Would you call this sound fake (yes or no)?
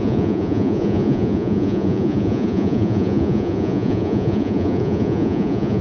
yes